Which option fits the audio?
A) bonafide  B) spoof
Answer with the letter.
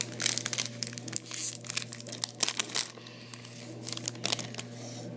A